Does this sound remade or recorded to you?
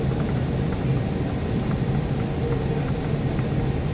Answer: recorded